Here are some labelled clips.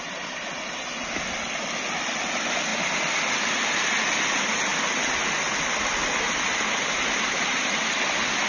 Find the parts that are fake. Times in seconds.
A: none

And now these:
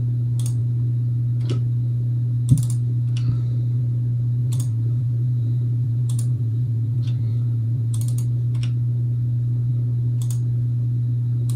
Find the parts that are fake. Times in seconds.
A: 4.4-8.0 (vocoder, Vocos)

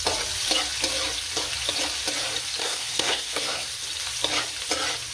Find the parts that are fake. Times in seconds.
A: 2.6-3.7 (codec, SNAC)

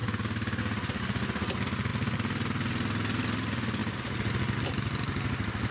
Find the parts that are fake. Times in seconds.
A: none

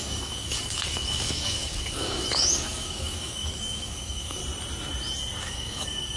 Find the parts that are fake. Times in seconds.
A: 0.0-4.4 (codec, DAC); 5.4-6.2

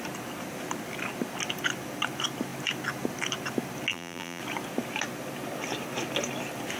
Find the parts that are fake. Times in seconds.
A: 3.9-4.4 (vocoder, BigVGAN v2)

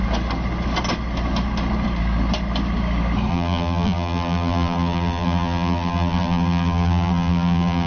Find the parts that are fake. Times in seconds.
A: 3.3-7.9 (vocoder, BigVGAN v2)

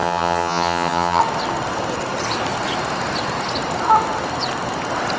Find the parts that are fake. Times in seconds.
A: 0.0-1.2 (vocoder, HiFi-GAN)